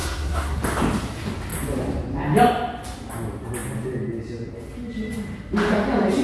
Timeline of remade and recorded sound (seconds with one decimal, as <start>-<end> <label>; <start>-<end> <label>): 0.0-0.6 remade; 0.6-6.2 recorded